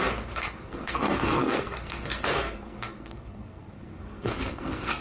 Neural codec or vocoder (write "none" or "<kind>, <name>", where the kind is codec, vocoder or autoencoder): codec, SNAC